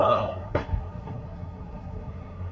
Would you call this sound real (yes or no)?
no